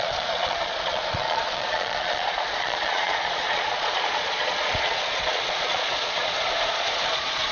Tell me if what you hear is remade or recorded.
remade